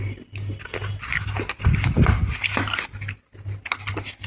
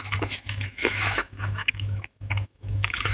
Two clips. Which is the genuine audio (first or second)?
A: first